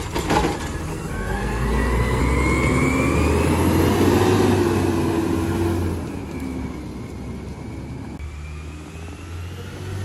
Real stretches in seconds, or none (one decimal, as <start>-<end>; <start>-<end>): 0.0-0.9; 2.2-10.0